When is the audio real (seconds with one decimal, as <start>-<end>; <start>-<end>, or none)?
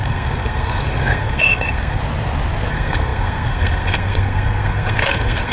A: 2.0-2.7